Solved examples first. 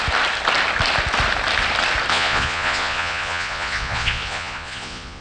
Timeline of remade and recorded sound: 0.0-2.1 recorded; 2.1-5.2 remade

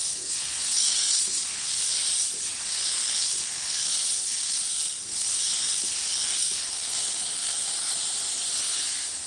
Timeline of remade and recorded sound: 0.0-2.0 remade; 2.0-2.6 recorded; 2.6-7.7 remade; 7.7-8.6 recorded; 8.6-9.3 remade